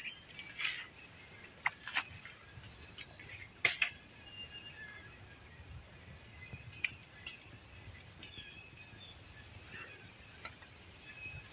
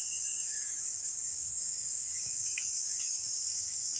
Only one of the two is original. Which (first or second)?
first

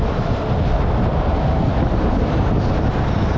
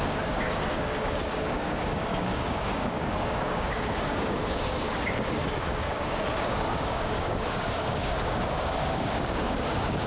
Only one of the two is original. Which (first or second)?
first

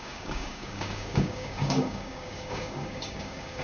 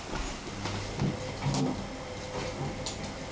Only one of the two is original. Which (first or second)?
second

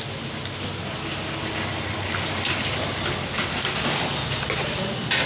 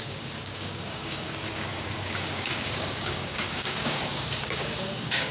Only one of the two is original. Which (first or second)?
first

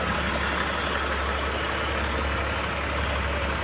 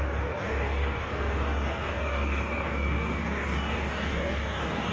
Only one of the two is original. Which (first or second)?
first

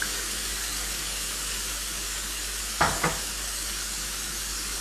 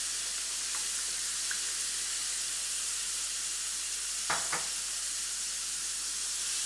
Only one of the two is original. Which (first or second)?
second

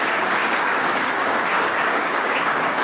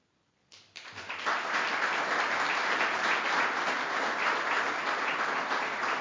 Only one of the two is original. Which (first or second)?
second